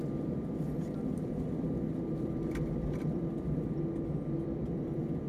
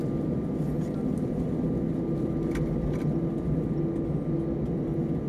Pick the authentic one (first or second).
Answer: second